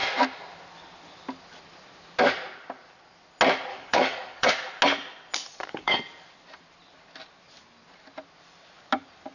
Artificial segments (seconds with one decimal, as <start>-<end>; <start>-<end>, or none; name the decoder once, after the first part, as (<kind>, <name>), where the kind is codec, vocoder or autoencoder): 3.7-4.5 (codec, DAC); 5.5-6.0